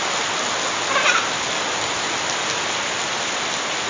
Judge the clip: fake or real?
real